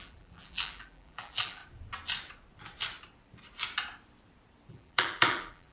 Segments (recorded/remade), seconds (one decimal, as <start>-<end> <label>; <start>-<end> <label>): 0.0-1.6 remade; 1.6-4.7 recorded; 4.7-5.7 remade